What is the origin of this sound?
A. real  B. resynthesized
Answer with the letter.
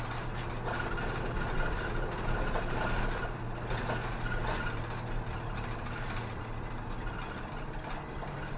A